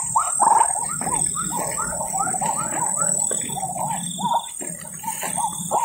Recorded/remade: recorded